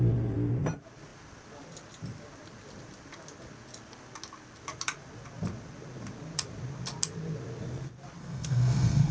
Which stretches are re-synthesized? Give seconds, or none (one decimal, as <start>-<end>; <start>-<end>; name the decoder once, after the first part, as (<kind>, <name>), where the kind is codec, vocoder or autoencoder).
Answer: 8.2-9.1 (codec, SNAC)